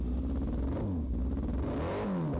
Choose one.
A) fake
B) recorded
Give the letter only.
B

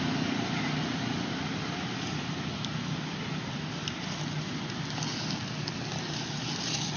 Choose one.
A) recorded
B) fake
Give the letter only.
A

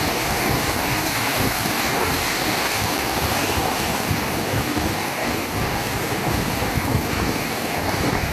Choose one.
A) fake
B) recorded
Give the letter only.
A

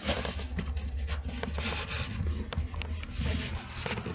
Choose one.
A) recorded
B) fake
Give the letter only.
A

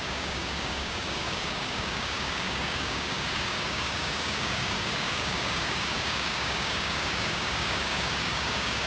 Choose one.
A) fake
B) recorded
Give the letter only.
A